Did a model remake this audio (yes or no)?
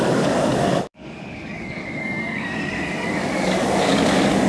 yes